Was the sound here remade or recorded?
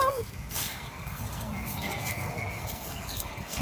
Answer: remade